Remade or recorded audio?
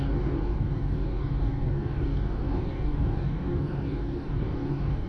remade